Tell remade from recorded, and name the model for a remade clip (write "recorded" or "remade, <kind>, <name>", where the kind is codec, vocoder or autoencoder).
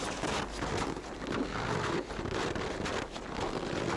recorded